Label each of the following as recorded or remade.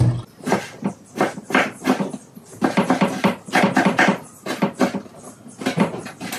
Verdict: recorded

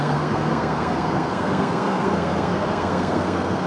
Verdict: remade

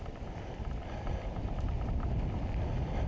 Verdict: recorded